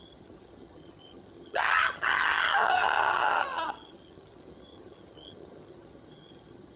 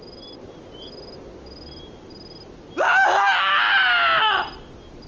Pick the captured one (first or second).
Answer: second